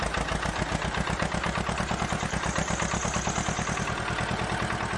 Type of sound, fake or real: real